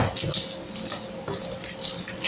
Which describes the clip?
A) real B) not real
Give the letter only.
A